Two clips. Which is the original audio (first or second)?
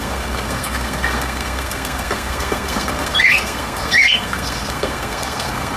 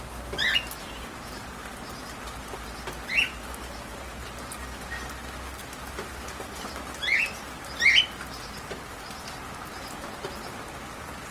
second